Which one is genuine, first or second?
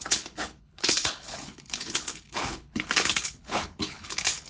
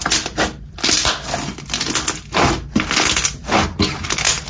second